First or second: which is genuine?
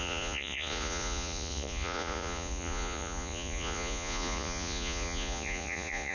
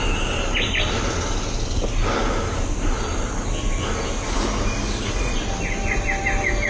second